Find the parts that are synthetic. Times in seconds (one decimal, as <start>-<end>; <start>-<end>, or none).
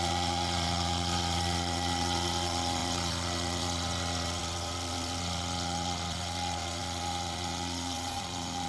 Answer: 0.0-8.7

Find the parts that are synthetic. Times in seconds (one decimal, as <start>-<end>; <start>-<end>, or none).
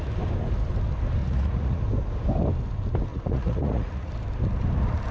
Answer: 1.2-1.8; 3.1-4.1